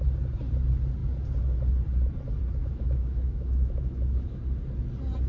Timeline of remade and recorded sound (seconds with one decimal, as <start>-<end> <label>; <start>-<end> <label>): 0.0-2.6 recorded; 2.6-4.4 remade; 4.4-5.3 recorded